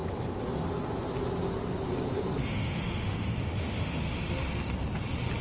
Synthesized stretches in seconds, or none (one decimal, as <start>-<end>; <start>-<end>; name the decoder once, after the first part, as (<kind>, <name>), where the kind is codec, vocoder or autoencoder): 2.4-4.3 (autoencoder, DAC-VAE)